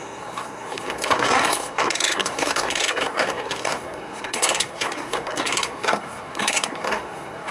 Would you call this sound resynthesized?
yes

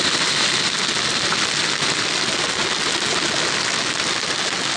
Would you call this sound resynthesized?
no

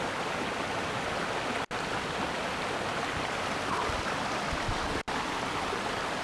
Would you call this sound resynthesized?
no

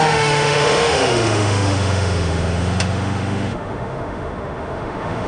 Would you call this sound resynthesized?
yes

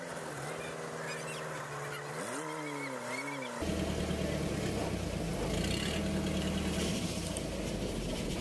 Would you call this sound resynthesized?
no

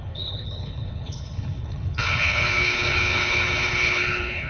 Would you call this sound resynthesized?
yes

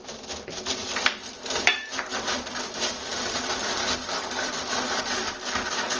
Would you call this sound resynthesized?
no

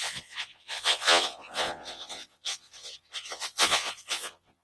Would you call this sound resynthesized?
yes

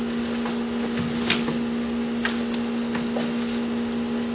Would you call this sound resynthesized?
no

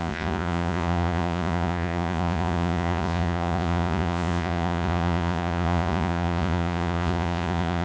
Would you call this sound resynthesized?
yes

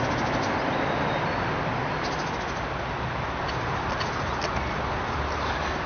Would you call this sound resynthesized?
no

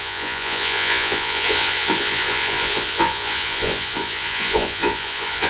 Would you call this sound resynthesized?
yes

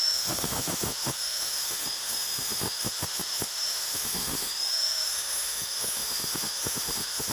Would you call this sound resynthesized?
yes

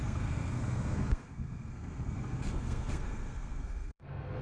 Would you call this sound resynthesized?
yes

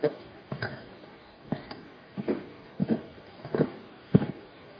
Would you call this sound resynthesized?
yes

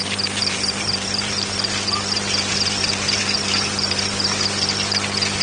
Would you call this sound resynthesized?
yes